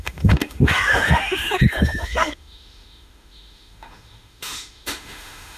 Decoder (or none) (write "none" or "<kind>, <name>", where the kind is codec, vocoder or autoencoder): autoencoder, DAC-VAE